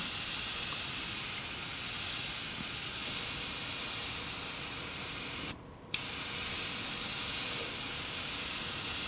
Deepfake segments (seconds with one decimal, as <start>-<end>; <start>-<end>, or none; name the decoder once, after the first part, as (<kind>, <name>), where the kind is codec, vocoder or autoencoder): none